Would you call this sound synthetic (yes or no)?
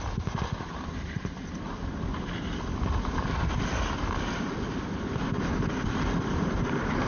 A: no